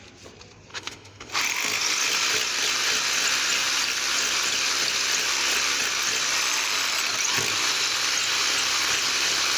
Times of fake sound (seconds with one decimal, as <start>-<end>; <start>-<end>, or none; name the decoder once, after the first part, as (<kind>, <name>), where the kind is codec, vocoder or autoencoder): 0.7-1.3 (autoencoder, DAC-VAE)